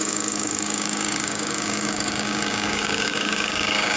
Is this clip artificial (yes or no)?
yes